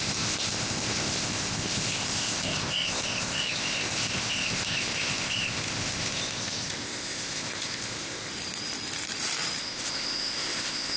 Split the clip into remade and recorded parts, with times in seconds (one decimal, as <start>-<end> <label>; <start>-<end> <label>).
0.0-8.3 remade; 8.3-9.6 recorded; 9.6-11.0 remade